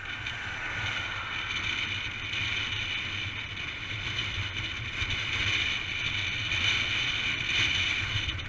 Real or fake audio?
real